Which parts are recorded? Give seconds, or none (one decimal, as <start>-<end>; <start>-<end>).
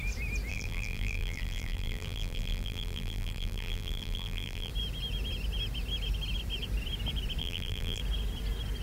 0.0-0.5; 4.7-7.4; 8.0-8.8